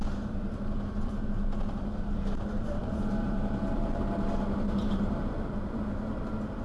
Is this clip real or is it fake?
fake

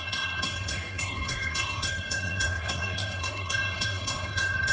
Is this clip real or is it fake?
fake